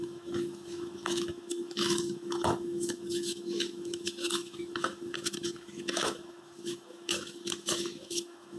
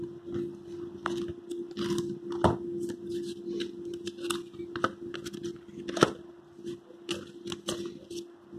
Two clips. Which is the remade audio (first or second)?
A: first